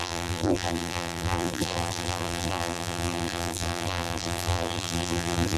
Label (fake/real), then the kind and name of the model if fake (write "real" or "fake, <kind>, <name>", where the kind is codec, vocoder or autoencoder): fake, vocoder, BigVGAN v2